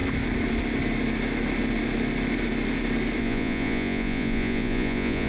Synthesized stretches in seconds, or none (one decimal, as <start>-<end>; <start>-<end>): 3.2-5.3